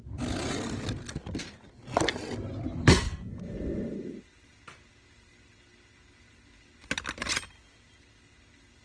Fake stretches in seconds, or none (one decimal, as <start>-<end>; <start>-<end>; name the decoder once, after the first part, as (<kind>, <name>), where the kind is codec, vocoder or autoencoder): none